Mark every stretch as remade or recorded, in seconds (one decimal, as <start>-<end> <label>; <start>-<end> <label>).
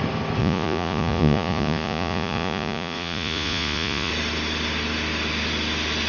0.0-0.4 recorded; 0.4-4.1 remade; 4.1-6.1 recorded